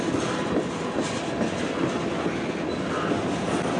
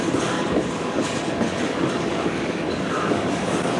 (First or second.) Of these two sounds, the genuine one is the first